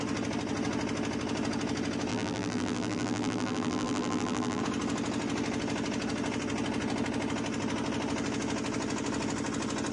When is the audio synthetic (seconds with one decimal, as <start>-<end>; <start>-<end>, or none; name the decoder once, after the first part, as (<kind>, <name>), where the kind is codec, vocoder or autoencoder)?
2.1-4.6 (vocoder, BigVGAN v2)